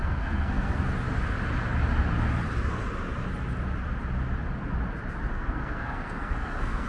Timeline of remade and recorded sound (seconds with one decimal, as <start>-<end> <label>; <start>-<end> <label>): 0.0-0.8 remade; 0.8-5.3 recorded; 5.3-6.9 remade